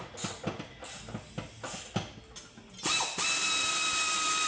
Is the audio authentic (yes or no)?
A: yes